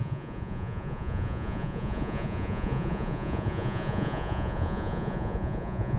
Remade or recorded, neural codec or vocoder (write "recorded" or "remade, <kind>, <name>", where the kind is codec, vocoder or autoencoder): remade, vocoder, Vocos